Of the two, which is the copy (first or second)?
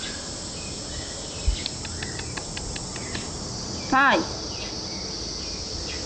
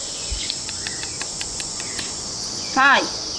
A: second